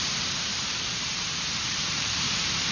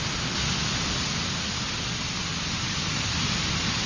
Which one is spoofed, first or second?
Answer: first